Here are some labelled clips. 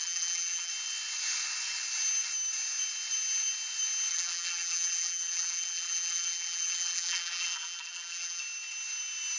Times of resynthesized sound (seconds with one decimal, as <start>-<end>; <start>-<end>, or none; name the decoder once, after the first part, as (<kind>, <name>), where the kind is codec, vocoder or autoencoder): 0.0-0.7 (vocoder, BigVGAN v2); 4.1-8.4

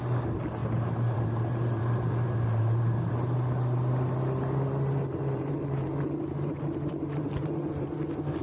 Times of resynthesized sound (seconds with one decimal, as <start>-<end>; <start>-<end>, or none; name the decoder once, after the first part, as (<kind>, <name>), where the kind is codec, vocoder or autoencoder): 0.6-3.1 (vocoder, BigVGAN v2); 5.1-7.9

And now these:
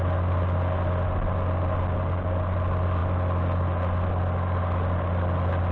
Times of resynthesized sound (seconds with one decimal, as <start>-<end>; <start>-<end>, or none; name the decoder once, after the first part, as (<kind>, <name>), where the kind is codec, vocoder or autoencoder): none